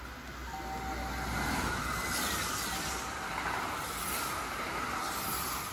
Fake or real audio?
real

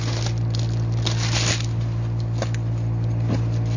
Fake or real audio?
real